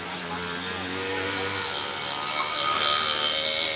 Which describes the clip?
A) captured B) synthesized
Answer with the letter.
A